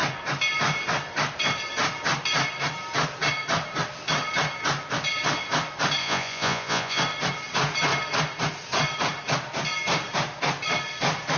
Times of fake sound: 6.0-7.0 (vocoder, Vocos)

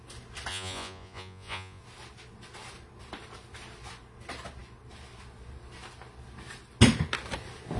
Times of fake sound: 0.5-1.8 (vocoder, Vocos)

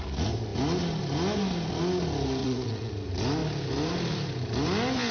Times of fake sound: 2.4-2.9 (vocoder, Vocos)

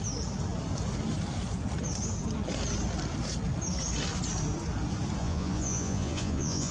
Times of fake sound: 5.2-6.7 (vocoder, Vocos)

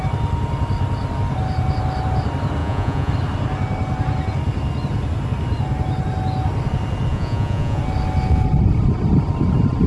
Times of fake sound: 2.6-3.1 (vocoder, Vocos); 7.1-7.8

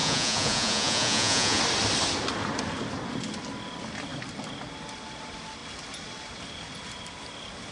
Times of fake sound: 0.0-1.6 (vocoder, Vocos)

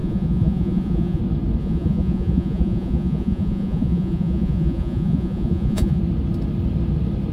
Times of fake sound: 0.0-1.2 (vocoder, Vocos); 1.6-6.0

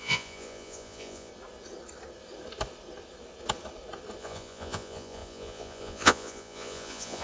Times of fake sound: 0.0-1.3 (vocoder, Vocos); 4.2-7.2